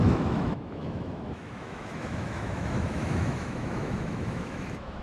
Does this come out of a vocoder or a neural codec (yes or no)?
yes